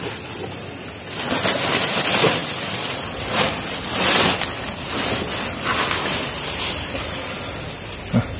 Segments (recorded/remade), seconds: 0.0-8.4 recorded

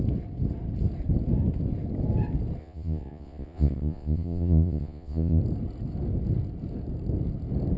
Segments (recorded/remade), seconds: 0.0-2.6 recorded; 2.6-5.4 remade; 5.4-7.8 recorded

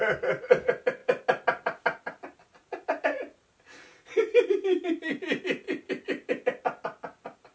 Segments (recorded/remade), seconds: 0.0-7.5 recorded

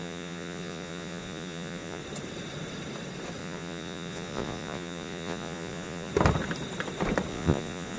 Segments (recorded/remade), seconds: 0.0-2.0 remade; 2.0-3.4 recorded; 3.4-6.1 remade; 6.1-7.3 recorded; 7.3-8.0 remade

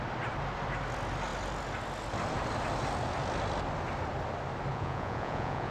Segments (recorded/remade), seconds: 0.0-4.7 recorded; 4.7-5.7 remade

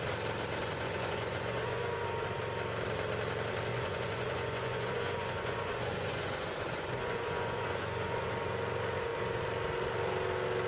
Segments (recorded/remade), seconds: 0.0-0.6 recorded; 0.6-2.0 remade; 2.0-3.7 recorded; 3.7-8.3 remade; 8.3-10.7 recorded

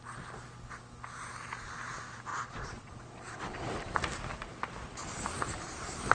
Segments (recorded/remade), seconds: 0.0-2.3 recorded; 2.3-2.9 remade; 2.9-6.1 recorded

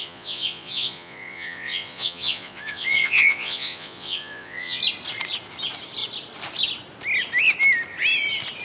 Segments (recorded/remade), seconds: 0.0-4.8 remade; 4.8-8.6 recorded